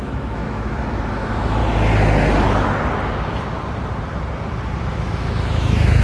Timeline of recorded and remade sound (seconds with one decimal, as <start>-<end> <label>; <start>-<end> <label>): 0.0-1.6 remade; 1.6-4.9 recorded; 4.9-6.0 remade